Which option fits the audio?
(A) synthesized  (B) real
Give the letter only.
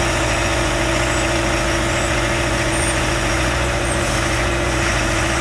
A